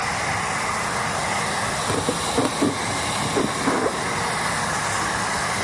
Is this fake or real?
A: real